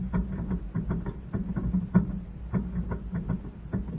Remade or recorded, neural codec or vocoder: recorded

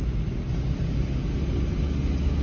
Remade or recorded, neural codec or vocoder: recorded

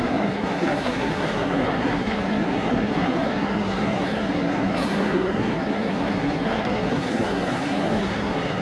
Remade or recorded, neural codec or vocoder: remade, codec, SNAC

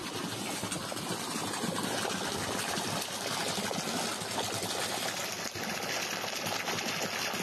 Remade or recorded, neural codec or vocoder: recorded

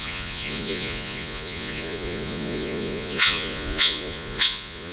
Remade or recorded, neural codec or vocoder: remade, vocoder, Vocos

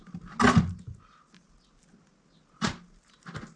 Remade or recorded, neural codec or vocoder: recorded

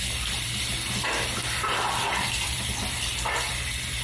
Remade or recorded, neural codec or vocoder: remade, vocoder, BigVGAN v2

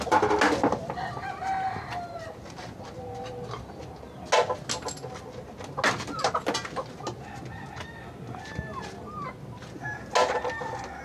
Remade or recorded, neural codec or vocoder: recorded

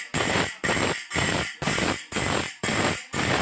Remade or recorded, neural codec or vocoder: remade, vocoder, BigVGAN v2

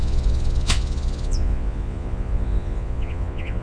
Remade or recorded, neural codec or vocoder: remade, vocoder, Vocos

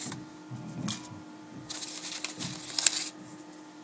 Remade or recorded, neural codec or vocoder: recorded